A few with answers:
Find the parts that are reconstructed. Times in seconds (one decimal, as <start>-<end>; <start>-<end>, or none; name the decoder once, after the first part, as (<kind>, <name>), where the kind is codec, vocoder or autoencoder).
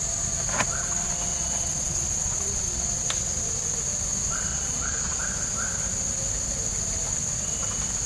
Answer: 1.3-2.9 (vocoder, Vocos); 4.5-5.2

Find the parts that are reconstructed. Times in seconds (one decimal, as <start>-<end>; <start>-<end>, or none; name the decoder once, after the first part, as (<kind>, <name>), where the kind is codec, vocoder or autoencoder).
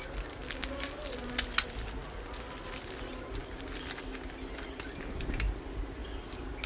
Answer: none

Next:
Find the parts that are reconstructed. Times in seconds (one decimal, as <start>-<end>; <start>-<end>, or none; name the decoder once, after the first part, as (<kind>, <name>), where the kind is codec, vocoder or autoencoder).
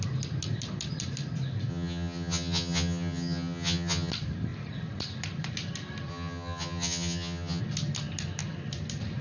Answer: 1.7-4.1 (vocoder, HiFi-GAN); 6.1-7.6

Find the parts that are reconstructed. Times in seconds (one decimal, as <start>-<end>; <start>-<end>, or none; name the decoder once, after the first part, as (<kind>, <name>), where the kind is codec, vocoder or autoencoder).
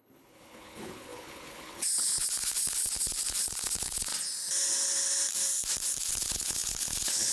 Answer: 0.0-4.1 (codec, HILCodec); 6.1-7.3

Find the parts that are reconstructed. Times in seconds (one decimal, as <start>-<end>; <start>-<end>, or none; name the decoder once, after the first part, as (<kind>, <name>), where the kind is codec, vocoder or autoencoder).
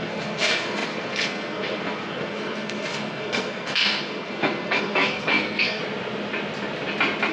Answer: 0.0-5.8 (codec, SNAC)